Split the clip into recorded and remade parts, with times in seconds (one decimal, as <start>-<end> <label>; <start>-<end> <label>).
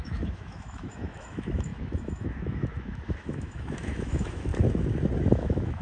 0.0-4.5 remade; 4.5-5.3 recorded; 5.3-5.8 remade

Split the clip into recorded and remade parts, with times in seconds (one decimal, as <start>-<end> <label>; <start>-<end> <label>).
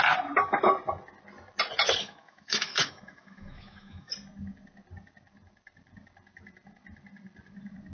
0.0-2.0 recorded; 2.0-4.1 remade; 4.1-7.9 recorded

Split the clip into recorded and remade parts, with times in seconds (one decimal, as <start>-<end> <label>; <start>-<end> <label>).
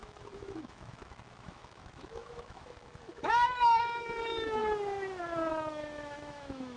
0.0-4.6 remade; 4.6-5.5 recorded; 5.5-6.8 remade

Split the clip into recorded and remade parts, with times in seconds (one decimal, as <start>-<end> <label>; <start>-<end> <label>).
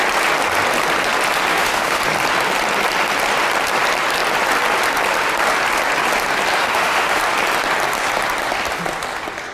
0.0-1.5 recorded; 1.5-2.0 remade; 2.0-6.6 recorded; 6.6-7.2 remade; 7.2-9.5 recorded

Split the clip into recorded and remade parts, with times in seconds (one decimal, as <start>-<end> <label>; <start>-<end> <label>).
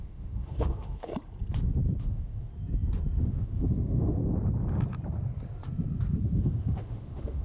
0.0-1.1 remade; 1.1-2.0 recorded; 2.0-2.5 remade; 2.5-3.2 recorded; 3.2-4.2 remade; 4.2-6.2 recorded; 6.2-7.4 remade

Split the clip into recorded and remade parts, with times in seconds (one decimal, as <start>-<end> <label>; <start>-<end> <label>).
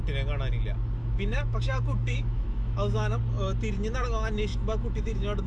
0.0-1.0 recorded; 1.0-3.2 remade; 3.2-4.5 recorded; 4.5-5.5 remade